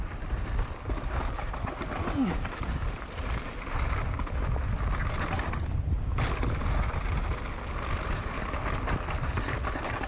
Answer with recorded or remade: recorded